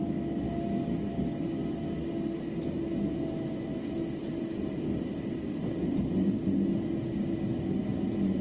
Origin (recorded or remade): recorded